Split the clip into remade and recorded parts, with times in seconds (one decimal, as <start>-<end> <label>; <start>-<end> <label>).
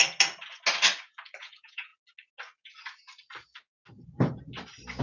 0.0-1.4 recorded; 1.4-1.9 remade; 1.9-5.0 recorded